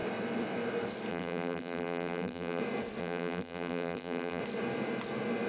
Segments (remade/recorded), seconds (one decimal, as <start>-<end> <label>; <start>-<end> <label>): 0.0-1.1 recorded; 1.1-2.6 remade; 2.6-3.0 recorded; 3.0-4.4 remade; 4.4-5.5 recorded